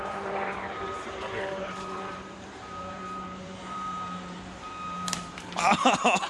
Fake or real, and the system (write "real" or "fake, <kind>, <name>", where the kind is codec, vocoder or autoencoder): fake, vocoder, BigVGAN v2